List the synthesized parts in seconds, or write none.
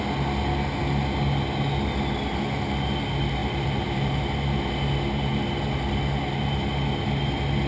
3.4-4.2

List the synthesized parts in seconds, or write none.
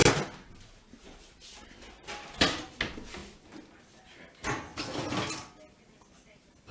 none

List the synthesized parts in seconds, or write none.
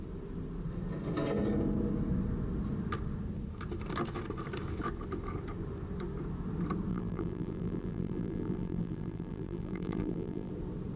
6.9-10.5